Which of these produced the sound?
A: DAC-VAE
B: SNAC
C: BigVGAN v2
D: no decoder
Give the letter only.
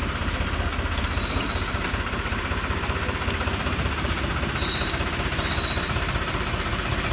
C